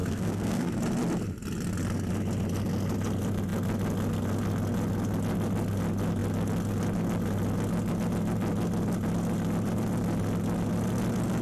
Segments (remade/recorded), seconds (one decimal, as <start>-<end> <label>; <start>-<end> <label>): 0.0-0.7 remade; 0.7-11.4 recorded